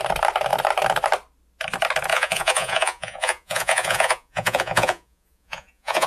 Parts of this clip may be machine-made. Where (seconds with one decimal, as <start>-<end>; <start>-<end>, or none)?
2.1-6.1